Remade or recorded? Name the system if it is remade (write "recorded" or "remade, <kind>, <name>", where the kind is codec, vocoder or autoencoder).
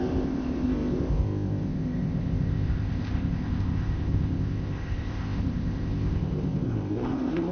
remade, codec, ZipCodec